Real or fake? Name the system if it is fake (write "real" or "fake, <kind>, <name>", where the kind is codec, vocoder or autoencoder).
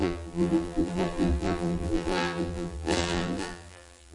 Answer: fake, vocoder, BigVGAN v2